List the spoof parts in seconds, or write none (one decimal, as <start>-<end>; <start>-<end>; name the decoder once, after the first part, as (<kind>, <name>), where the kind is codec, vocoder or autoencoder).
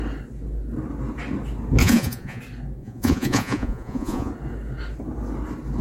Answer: 1.8-2.4 (vocoder, Vocos); 2.8-4.3